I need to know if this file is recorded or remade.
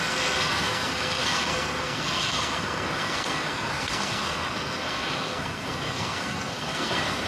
remade